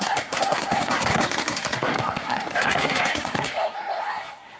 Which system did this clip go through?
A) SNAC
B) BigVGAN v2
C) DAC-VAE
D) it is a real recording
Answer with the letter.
A